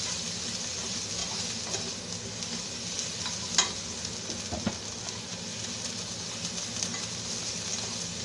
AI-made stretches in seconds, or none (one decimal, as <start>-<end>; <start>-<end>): none